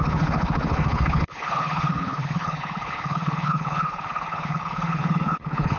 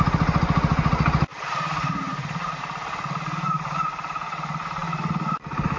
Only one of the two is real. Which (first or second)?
second